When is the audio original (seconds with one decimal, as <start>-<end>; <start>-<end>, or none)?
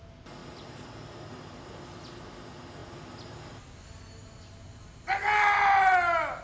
0.0-6.4